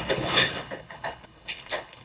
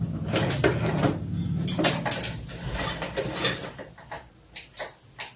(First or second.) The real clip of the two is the second